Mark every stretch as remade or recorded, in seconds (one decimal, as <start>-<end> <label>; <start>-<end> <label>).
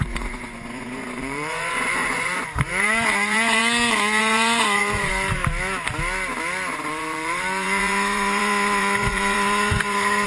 0.0-3.6 remade; 3.6-4.2 recorded; 4.2-5.4 remade; 5.4-6.7 recorded; 6.7-10.3 remade